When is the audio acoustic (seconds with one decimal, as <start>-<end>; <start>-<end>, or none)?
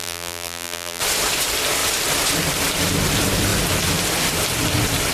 1.0-5.1